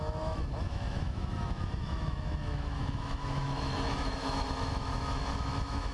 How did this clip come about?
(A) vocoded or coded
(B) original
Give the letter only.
A